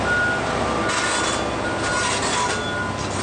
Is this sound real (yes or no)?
yes